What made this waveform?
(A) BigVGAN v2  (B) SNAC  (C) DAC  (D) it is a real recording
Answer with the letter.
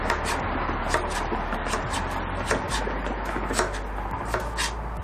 D